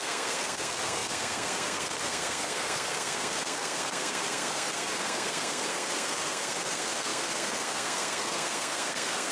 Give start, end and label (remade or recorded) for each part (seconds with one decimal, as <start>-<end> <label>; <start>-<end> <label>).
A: 0.0-9.3 remade